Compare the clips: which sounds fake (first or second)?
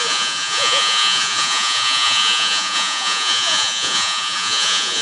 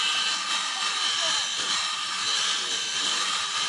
first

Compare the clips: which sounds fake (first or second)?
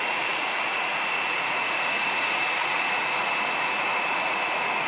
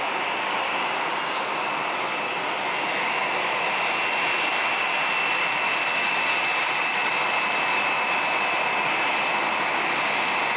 first